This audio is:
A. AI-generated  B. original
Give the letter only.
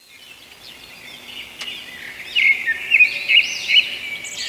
B